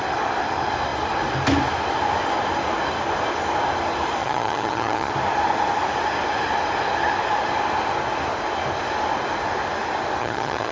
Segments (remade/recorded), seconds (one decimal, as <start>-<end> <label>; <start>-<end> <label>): 0.0-4.2 recorded; 4.2-5.1 remade; 5.1-10.2 recorded; 10.2-10.7 remade